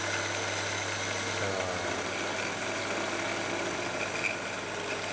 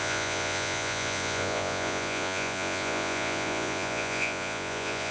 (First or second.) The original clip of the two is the first